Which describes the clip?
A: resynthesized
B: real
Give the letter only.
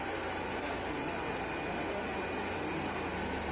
B